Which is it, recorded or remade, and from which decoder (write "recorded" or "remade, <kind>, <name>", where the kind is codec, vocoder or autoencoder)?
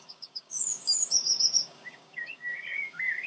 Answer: remade, codec, DAC